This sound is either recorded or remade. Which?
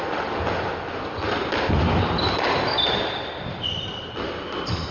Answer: recorded